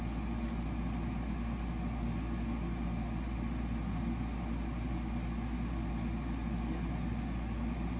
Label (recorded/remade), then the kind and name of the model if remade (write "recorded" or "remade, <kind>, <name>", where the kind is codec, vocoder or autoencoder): recorded